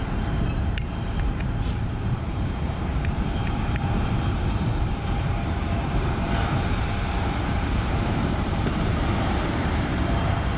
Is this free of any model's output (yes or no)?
no